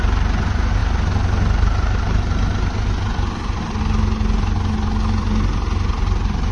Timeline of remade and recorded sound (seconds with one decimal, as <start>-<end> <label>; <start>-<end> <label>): 0.0-6.5 recorded